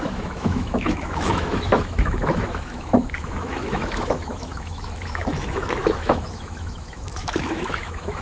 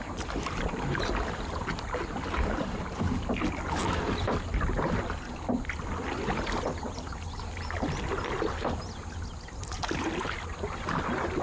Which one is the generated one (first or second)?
first